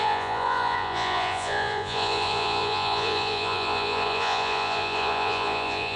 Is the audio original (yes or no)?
no